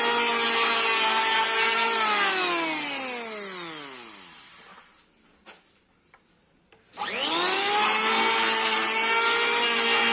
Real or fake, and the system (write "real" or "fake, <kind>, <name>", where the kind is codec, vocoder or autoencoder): real